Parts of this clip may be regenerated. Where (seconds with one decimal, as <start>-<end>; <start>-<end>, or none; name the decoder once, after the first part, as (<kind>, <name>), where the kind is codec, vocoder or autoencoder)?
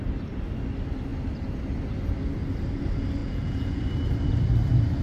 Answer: 3.2-3.8 (vocoder, Vocos)